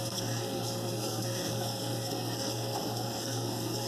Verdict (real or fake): fake